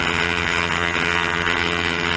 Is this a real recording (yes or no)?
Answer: no